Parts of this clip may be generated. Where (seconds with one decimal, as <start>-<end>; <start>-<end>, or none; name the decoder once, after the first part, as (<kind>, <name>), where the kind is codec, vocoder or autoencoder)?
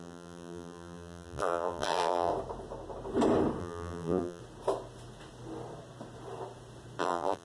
0.0-2.3 (vocoder, BigVGAN v2); 3.6-4.4; 7.0-7.4